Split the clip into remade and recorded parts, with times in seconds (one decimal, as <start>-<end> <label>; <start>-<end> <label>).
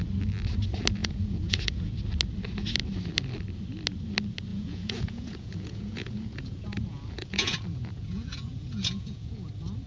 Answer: 0.0-1.0 recorded; 1.0-1.9 remade; 1.9-4.5 recorded; 4.5-9.5 remade; 9.5-9.9 recorded